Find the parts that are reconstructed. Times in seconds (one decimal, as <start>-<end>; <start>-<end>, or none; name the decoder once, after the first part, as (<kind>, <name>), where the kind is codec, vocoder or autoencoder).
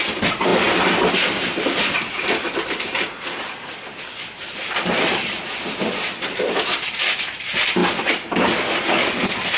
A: none